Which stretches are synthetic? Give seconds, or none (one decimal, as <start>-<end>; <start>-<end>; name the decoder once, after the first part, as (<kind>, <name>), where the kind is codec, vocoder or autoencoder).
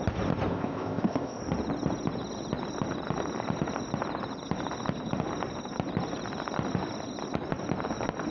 0.5-1.4 (codec, ZipCodec)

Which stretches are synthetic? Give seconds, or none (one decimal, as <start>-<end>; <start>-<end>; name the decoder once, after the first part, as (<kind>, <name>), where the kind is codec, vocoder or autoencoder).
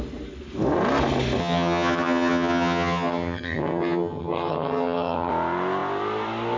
1.4-5.3 (vocoder, HiFi-GAN)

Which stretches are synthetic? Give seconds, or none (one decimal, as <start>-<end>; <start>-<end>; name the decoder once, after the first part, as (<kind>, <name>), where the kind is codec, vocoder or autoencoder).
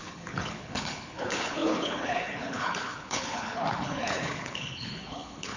0.0-5.6 (codec, HILCodec)